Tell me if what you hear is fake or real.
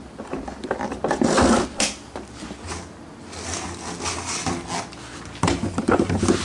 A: real